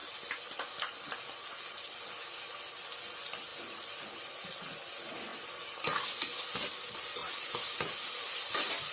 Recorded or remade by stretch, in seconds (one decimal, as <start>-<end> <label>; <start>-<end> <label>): 0.0-8.9 recorded